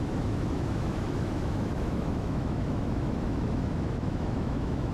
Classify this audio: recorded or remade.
remade